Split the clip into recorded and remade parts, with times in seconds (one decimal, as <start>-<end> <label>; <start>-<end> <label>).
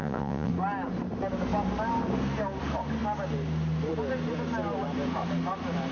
0.0-0.5 remade; 0.5-5.9 recorded